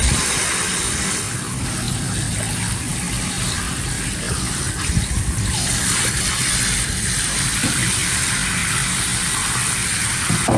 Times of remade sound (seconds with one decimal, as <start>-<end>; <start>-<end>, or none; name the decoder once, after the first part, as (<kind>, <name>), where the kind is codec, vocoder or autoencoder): none